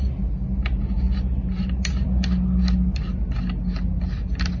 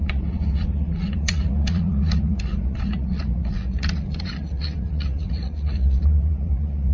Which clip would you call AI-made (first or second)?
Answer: second